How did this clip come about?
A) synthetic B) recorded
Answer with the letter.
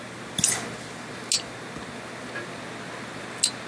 B